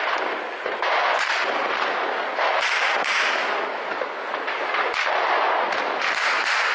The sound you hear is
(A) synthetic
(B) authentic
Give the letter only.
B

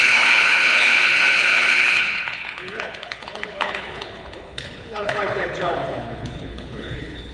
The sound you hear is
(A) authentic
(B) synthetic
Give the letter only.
B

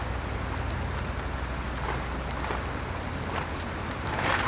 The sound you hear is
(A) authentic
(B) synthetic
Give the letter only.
A